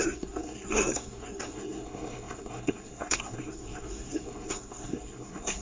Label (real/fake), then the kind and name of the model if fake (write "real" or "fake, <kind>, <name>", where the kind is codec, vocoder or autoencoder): fake, codec, SNAC